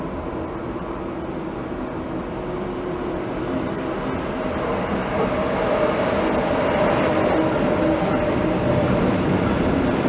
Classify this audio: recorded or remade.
recorded